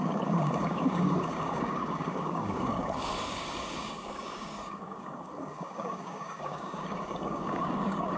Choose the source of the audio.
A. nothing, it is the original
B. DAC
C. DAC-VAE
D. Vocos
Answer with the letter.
B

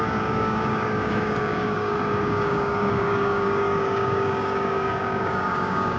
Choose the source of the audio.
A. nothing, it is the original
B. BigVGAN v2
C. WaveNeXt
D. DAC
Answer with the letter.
D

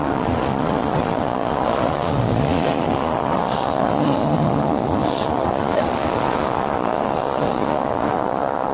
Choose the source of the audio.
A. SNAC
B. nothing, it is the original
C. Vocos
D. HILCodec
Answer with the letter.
C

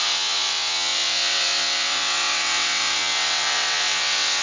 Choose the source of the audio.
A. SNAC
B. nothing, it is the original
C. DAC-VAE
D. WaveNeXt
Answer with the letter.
D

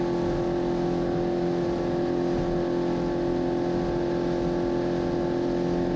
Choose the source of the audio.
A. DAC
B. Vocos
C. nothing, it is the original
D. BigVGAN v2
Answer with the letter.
C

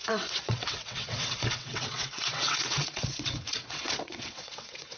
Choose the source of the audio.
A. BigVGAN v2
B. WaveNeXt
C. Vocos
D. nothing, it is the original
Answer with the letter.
B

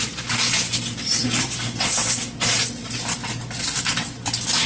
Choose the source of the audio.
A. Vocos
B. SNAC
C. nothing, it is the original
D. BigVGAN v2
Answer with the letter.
C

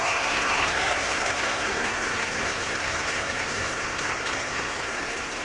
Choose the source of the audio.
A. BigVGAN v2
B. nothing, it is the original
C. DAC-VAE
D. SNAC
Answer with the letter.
D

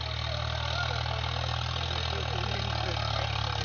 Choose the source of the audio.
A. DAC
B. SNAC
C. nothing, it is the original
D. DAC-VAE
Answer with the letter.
C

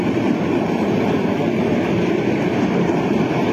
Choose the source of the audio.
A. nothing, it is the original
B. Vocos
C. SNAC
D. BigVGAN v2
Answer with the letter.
D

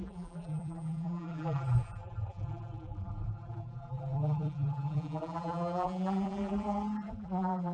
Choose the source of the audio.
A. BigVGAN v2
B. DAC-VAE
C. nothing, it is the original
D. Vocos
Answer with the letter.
A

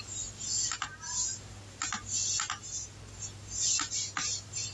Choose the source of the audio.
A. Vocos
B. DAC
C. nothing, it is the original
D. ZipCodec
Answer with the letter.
C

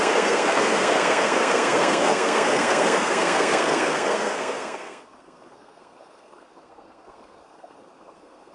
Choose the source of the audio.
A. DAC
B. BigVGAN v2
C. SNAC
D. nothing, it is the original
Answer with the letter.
C